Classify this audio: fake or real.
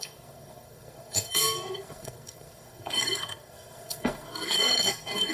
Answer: fake